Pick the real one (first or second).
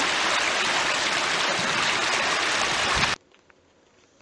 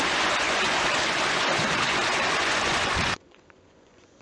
first